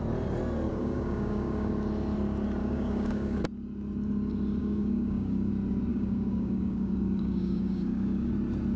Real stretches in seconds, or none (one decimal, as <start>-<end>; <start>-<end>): 0.0-0.7; 1.7-2.6; 3.4-4.6; 5.5-5.9; 8.3-8.8